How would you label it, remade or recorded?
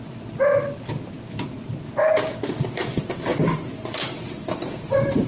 recorded